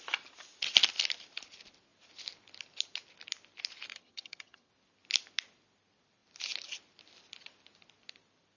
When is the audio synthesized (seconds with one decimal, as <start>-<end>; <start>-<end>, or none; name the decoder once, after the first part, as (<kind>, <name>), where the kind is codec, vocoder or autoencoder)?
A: 3.9-4.7 (vocoder, HiFi-GAN)